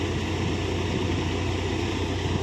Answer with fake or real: real